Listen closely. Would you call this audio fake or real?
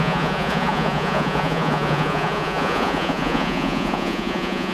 fake